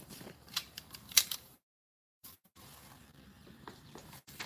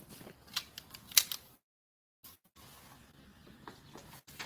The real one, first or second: second